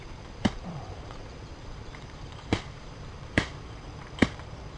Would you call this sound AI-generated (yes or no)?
yes